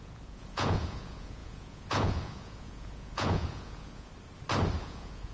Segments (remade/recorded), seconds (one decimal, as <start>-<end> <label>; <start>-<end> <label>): 0.0-4.1 remade; 4.1-4.8 recorded; 4.8-5.3 remade